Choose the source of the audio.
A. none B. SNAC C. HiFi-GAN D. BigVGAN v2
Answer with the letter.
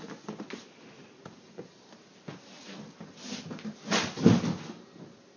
A